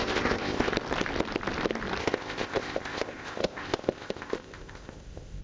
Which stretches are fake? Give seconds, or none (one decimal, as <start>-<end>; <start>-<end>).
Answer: 0.0-0.7; 2.0-5.4